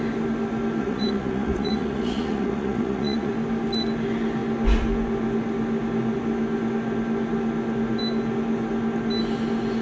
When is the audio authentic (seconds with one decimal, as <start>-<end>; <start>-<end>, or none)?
0.0-0.8; 3.3-9.8